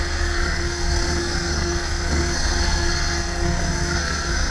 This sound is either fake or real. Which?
fake